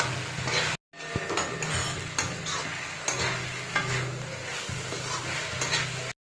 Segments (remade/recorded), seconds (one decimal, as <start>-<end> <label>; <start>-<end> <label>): 0.0-6.2 recorded